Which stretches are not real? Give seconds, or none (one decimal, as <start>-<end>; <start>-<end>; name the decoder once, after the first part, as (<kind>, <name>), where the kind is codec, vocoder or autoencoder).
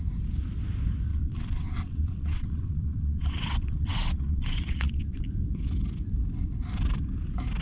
1.1-5.2 (vocoder, WaveNeXt)